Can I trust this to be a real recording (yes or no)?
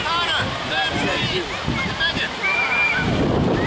yes